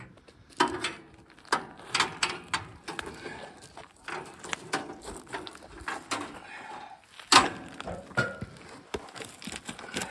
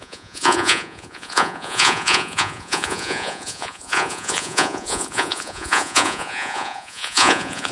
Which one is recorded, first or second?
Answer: first